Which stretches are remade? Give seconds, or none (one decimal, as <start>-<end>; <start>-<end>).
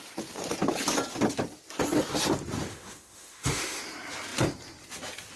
2.7-3.8